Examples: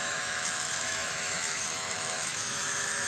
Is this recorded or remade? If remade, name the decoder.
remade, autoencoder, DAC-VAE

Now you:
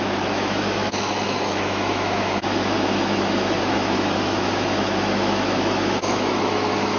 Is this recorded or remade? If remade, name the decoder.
remade, autoencoder, DAC-VAE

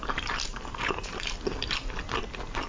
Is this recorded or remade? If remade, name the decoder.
recorded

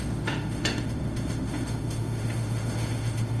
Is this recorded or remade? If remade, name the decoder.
remade, autoencoder, DAC-VAE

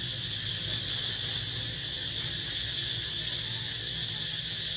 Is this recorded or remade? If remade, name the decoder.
recorded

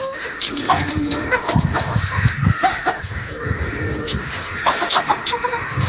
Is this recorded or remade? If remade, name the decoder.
remade, autoencoder, DAC-VAE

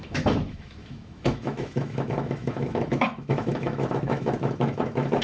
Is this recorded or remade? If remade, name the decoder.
remade, autoencoder, DAC-VAE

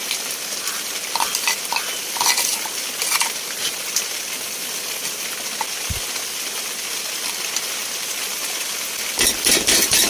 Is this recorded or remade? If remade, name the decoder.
recorded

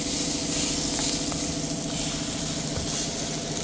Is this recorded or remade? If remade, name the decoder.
recorded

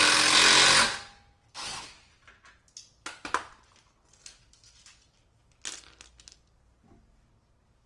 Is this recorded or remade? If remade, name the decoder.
recorded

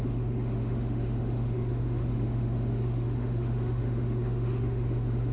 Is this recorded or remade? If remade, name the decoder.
remade, autoencoder, DAC-VAE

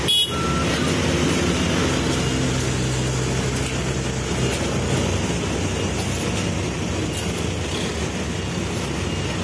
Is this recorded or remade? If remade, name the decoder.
recorded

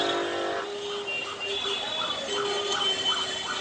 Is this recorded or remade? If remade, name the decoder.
recorded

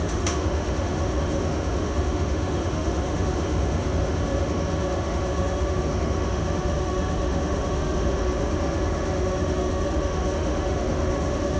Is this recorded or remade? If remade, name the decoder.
remade, autoencoder, DAC-VAE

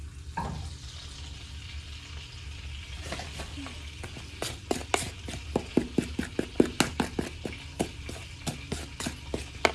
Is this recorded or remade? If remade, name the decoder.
recorded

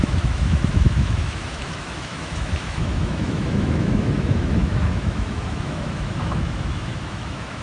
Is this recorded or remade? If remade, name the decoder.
remade, autoencoder, DAC-VAE